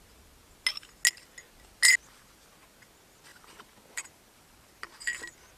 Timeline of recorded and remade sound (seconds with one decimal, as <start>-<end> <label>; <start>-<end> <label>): 0.0-3.3 recorded; 3.3-4.7 remade; 4.7-5.6 recorded